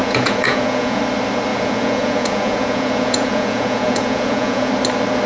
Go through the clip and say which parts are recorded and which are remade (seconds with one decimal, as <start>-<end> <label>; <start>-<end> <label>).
0.0-1.0 remade; 1.0-1.5 recorded; 1.5-4.7 remade; 4.7-5.3 recorded